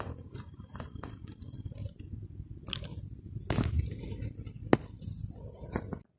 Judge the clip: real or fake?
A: real